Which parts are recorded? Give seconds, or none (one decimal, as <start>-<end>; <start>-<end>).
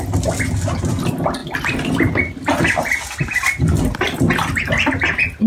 0.0-5.5